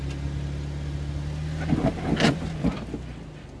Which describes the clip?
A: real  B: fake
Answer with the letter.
A